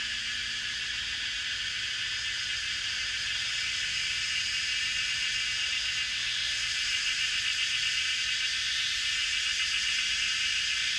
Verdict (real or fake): real